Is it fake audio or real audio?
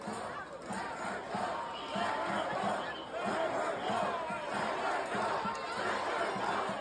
real